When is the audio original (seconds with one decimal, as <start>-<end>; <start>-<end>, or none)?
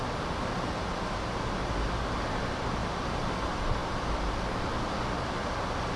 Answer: 0.0-2.8; 3.3-6.0